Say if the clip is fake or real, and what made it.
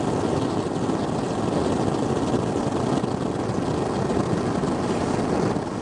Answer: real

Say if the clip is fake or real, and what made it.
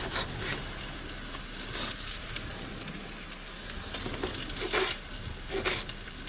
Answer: real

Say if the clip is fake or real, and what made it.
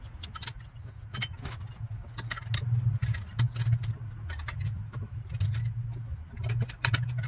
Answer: real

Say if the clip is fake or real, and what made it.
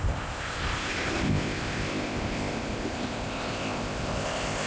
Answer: fake, codec, ZipCodec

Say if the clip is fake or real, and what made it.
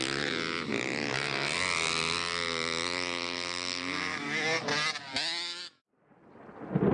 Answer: real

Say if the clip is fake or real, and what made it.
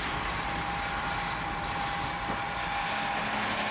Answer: real